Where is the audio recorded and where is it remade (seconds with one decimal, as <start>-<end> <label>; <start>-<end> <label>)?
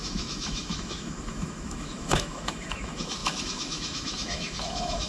0.0-5.1 remade